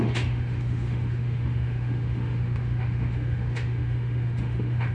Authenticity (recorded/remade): remade